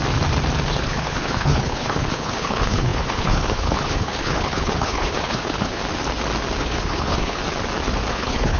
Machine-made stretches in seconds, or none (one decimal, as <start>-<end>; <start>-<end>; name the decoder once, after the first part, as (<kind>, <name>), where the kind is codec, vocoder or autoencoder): 0.8-5.8 (codec, HILCodec); 6.6-7.4; 8.1-8.6